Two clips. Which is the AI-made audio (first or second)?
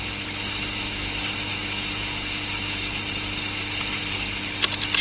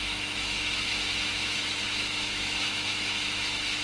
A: second